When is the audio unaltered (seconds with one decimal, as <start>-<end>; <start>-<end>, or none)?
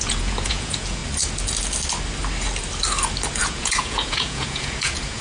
1.0-3.4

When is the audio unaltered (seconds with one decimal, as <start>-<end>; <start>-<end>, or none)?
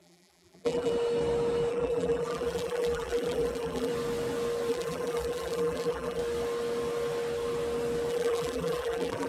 0.9-1.7; 3.9-4.7; 6.2-8.1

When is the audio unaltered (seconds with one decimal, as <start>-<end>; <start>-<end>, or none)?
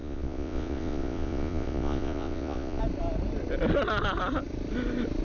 2.8-5.2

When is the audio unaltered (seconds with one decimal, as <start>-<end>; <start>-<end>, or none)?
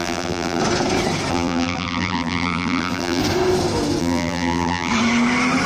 0.6-1.3; 3.2-4.0; 4.9-5.7